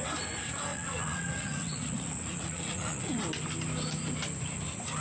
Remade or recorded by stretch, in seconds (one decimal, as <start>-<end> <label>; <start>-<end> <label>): 0.0-0.7 recorded; 0.7-3.2 remade; 3.2-5.0 recorded